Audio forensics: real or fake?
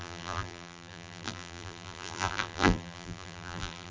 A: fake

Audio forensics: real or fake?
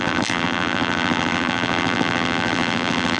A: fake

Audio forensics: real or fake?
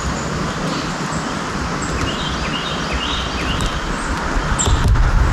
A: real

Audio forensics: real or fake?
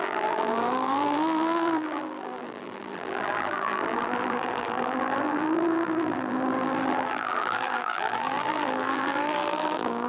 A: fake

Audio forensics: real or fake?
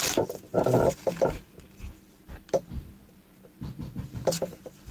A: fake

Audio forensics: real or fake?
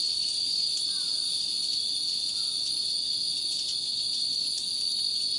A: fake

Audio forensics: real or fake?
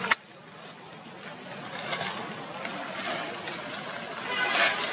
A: real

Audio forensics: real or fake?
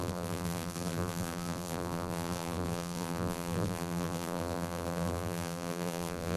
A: fake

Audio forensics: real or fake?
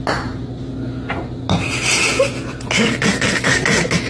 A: real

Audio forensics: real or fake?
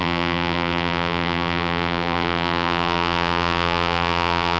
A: fake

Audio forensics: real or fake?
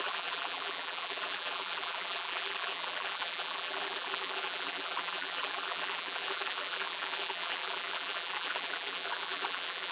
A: fake